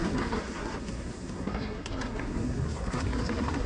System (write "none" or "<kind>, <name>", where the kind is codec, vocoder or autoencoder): codec, SNAC